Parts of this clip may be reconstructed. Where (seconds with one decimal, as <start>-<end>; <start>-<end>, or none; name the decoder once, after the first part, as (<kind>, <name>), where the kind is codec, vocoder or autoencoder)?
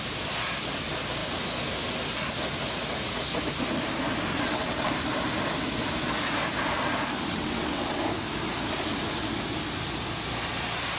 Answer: 4.3-4.9 (vocoder, WaveNeXt); 7.3-8.0